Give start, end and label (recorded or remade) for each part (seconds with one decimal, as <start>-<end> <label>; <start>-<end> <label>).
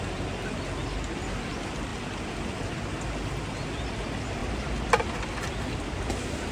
0.0-6.5 recorded